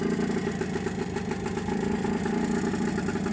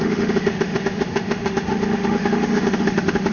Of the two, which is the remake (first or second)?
second